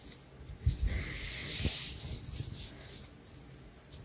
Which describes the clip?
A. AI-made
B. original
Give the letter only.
B